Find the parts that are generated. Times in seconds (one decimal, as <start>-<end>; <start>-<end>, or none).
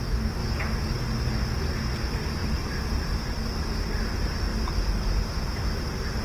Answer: 2.4-3.2; 4.5-6.2